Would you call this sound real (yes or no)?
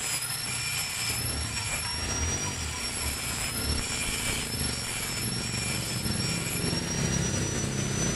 yes